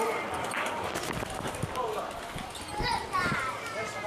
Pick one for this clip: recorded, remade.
recorded